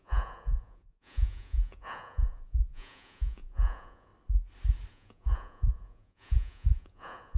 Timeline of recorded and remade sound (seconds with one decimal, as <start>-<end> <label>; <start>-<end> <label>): 0.0-4.1 remade; 4.1-4.9 recorded; 4.9-7.4 remade